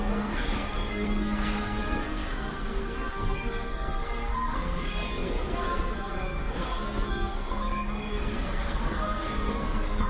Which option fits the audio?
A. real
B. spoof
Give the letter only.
B